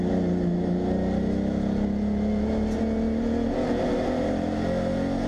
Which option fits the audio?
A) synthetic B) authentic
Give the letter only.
B